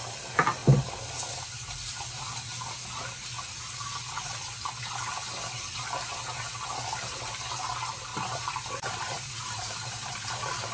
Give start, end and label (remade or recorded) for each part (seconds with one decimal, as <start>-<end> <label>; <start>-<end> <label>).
0.0-8.1 recorded; 8.1-10.7 remade

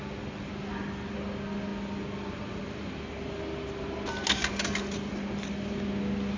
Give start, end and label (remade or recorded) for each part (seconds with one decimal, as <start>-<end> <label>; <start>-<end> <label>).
0.0-6.4 recorded